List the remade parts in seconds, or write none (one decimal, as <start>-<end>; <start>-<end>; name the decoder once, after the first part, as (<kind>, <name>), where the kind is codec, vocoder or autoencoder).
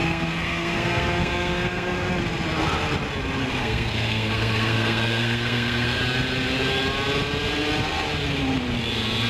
0.0-2.1 (codec, SNAC); 3.4-6.0